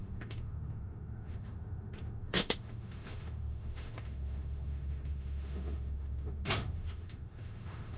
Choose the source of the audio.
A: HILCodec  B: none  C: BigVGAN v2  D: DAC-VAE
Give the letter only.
D